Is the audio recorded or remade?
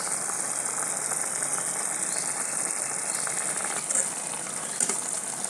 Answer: recorded